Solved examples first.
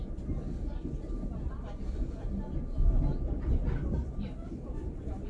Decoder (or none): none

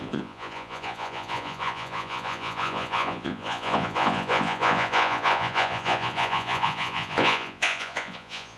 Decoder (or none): vocoder, Vocos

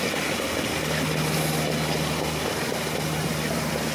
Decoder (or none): none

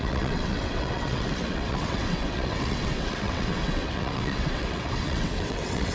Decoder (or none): vocoder, WaveNeXt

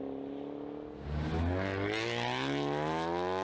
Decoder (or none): none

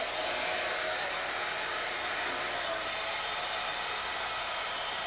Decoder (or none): vocoder, BigVGAN v2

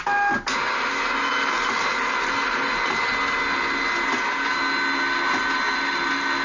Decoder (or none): none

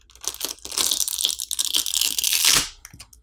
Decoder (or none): none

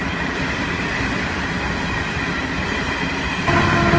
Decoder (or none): none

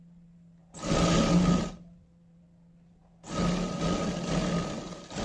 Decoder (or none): none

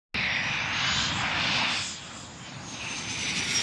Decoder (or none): none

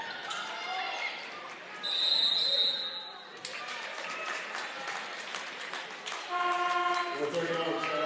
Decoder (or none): none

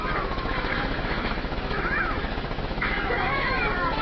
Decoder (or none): autoencoder, DAC-VAE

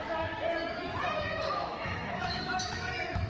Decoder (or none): autoencoder, DAC-VAE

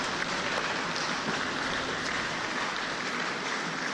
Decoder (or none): none